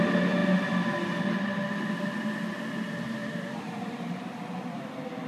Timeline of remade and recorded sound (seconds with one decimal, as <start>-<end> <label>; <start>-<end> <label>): 0.0-3.2 recorded; 3.2-4.3 remade; 4.3-5.3 recorded